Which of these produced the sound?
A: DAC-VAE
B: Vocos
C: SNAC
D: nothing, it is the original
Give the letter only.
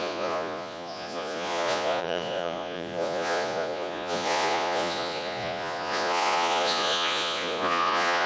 B